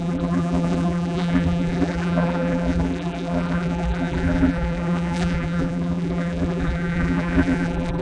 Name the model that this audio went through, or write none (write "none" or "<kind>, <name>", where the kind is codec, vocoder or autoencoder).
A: vocoder, BigVGAN v2